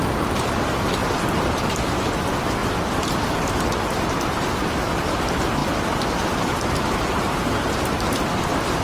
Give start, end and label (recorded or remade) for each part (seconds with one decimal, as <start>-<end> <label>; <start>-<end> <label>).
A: 0.0-8.8 recorded